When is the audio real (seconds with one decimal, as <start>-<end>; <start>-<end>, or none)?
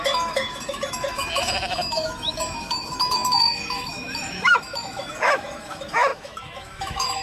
none